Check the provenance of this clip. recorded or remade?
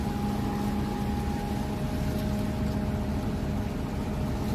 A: recorded